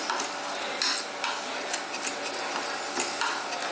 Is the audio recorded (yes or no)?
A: yes